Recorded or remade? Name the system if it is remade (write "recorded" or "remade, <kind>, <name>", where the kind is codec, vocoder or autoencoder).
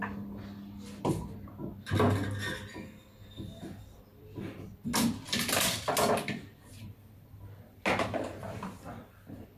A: recorded